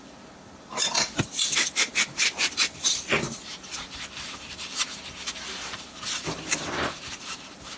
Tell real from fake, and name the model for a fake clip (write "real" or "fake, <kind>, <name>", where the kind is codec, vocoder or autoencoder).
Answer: fake, vocoder, BigVGAN v2